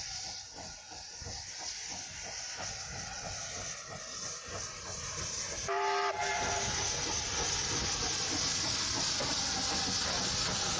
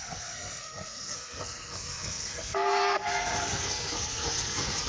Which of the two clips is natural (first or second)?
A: first